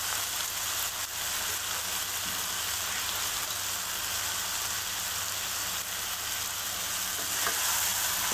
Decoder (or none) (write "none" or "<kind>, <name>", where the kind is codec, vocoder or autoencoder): none